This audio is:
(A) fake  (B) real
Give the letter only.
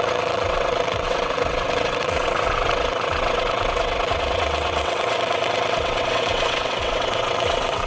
A